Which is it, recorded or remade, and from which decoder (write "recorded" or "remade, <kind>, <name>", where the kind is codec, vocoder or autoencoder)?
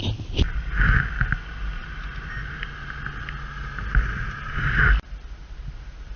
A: recorded